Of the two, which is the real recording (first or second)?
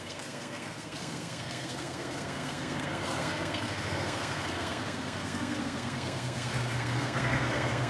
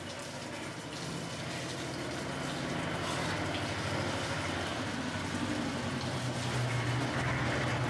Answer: second